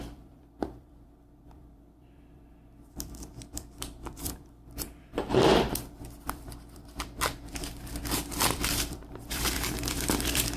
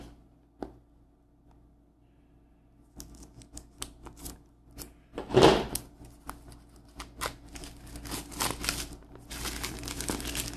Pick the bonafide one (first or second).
second